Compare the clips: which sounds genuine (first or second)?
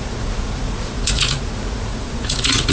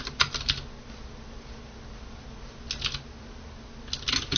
second